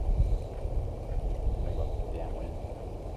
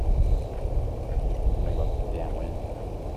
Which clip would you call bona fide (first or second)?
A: second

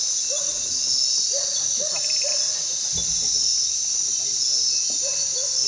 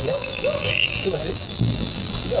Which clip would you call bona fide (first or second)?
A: first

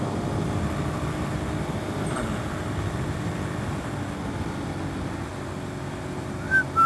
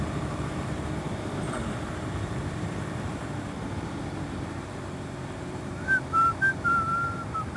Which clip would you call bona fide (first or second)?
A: first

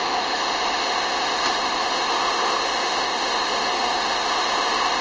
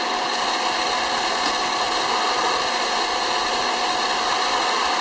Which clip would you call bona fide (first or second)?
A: second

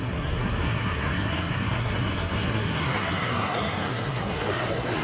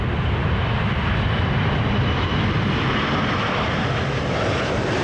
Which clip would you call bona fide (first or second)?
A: second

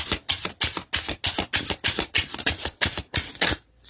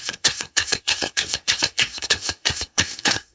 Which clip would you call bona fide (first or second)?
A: first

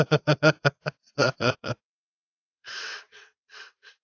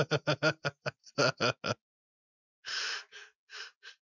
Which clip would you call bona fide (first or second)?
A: second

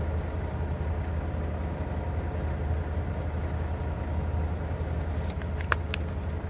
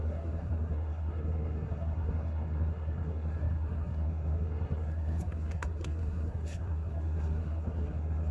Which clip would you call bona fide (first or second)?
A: first